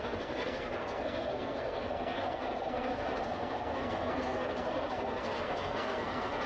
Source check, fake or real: fake